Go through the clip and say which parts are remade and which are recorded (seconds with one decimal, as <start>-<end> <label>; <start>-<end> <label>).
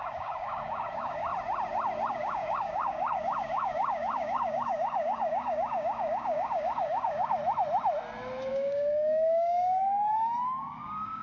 0.0-1.3 remade; 1.3-2.1 recorded; 2.1-7.4 remade; 7.4-8.5 recorded; 8.5-11.2 remade